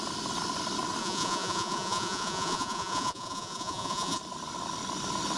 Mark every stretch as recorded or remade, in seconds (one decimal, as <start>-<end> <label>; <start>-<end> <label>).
0.0-1.0 recorded; 1.0-4.2 remade; 4.2-5.4 recorded